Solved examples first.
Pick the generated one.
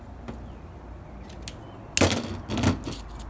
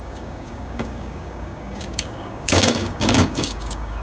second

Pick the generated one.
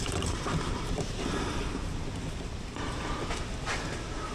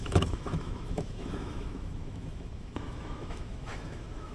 second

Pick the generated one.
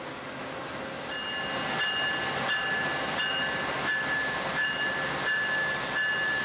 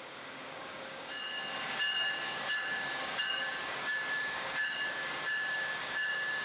second